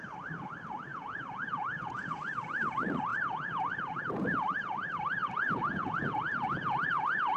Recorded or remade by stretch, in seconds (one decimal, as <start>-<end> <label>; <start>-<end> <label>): 0.0-0.9 recorded; 0.9-2.2 remade; 2.2-3.1 recorded; 3.1-4.0 remade; 4.0-5.2 recorded; 5.2-7.4 remade